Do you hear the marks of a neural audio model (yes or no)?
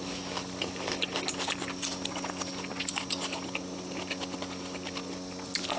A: no